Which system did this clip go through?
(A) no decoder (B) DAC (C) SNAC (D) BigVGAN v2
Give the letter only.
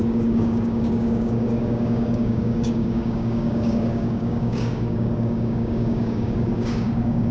B